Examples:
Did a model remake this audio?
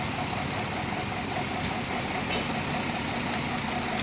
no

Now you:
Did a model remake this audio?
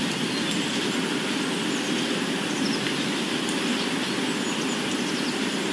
no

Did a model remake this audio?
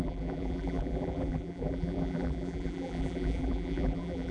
yes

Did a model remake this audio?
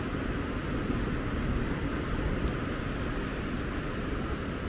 no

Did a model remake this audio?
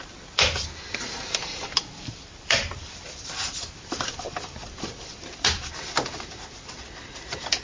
yes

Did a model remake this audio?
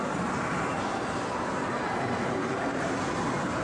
yes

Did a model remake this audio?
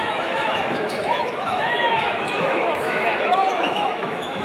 yes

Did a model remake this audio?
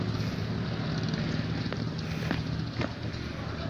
no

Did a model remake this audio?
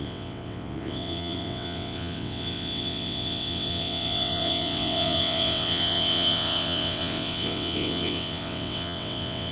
yes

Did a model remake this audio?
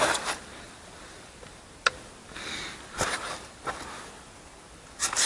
no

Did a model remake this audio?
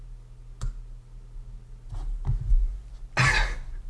no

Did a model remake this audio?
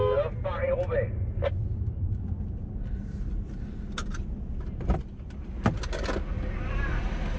no